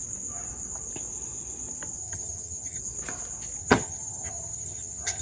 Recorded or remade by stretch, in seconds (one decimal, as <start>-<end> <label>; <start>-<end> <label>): 0.0-2.0 recorded; 2.0-2.8 remade; 2.8-3.6 recorded; 3.6-5.2 remade

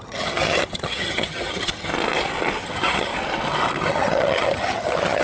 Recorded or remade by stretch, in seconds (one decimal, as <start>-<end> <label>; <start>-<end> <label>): 0.0-1.9 remade; 1.9-2.6 recorded; 2.6-3.1 remade; 3.1-3.8 recorded; 3.8-5.2 remade

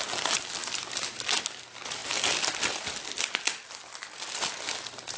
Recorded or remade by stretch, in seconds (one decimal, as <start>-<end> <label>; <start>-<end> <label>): 0.0-5.2 recorded